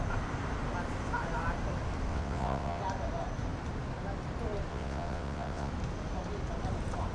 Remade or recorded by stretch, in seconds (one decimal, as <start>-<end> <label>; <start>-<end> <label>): 0.0-2.1 recorded; 2.1-2.8 remade; 2.8-4.7 recorded; 4.7-5.7 remade; 5.7-7.1 recorded